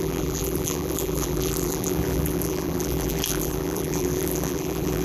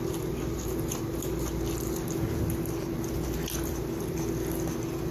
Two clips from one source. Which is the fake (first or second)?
first